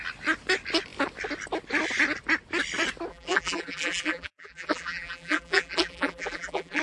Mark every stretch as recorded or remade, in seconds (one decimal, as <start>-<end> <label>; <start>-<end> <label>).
0.0-3.1 recorded; 3.1-6.8 remade